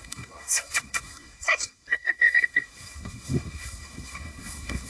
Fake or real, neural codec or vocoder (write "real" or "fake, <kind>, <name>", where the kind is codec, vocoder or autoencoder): fake, codec, SNAC